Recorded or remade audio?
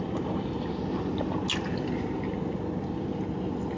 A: recorded